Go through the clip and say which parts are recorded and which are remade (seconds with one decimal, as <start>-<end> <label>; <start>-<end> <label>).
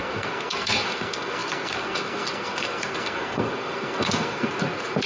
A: 0.0-5.1 remade